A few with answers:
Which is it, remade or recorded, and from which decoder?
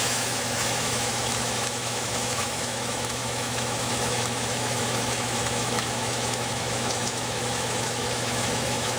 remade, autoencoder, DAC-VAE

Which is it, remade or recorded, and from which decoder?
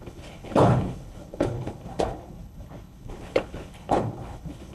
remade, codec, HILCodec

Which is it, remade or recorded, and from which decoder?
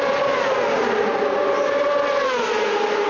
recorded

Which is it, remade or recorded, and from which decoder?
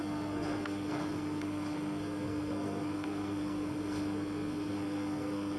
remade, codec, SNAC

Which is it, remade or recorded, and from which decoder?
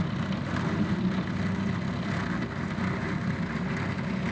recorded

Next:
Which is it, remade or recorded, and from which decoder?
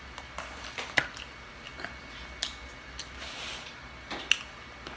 recorded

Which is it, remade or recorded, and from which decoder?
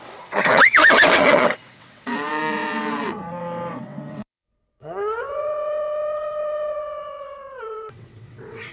remade, vocoder, WaveNeXt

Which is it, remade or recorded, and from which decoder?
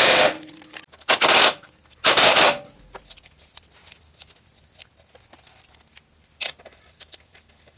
recorded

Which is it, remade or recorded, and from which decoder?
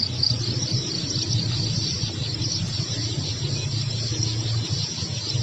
recorded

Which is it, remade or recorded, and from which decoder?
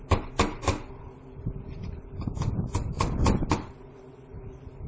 recorded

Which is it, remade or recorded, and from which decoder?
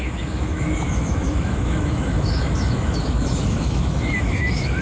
remade, autoencoder, DAC-VAE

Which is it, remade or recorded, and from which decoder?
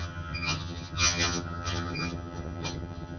remade, vocoder, HiFi-GAN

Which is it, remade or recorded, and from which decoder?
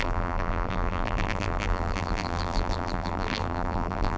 remade, vocoder, BigVGAN v2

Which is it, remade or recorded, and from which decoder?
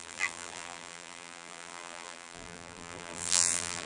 remade, vocoder, BigVGAN v2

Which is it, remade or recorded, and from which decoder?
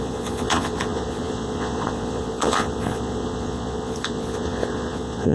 remade, vocoder, Vocos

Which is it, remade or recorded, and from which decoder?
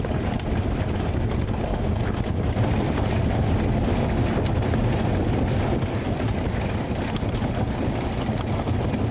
recorded